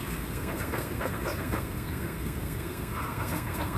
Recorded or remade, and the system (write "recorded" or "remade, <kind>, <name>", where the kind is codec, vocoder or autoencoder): remade, codec, SNAC